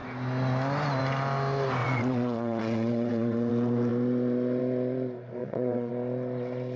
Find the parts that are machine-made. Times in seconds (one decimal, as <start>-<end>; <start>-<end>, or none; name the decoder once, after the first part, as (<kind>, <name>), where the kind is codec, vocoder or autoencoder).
1.8-3.5 (vocoder, WaveNeXt); 5.4-5.9